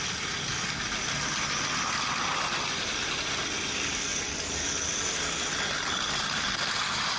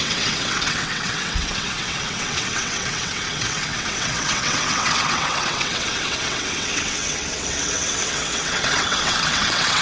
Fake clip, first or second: second